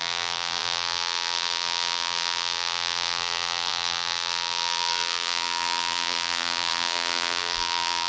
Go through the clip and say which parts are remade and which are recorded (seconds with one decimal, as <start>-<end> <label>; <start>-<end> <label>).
0.0-8.1 remade